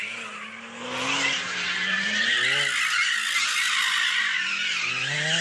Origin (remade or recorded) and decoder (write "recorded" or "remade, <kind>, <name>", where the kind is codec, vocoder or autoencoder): recorded